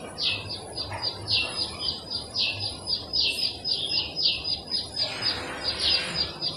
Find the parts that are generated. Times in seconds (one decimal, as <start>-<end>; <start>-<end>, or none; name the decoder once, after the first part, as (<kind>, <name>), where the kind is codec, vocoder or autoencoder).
none